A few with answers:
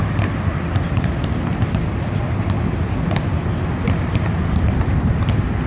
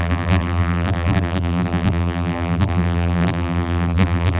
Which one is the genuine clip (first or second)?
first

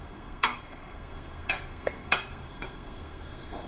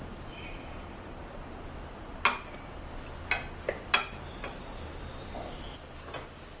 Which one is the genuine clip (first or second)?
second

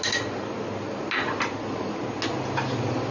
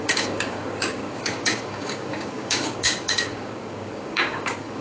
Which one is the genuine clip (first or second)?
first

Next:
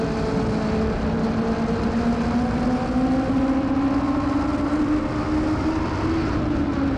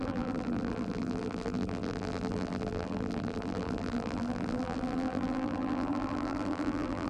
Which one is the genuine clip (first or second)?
first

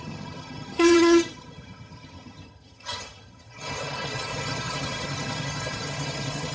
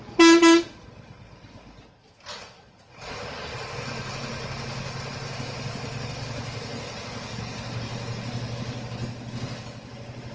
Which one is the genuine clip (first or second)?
second